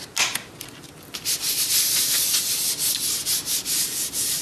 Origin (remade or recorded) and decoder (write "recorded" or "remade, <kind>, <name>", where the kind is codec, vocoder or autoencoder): recorded